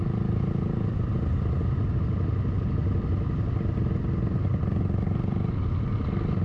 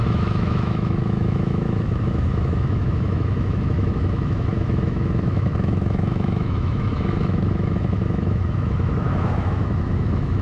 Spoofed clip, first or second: second